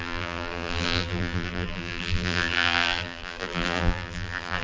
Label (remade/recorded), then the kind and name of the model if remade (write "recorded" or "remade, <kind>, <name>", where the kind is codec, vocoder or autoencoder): remade, vocoder, BigVGAN v2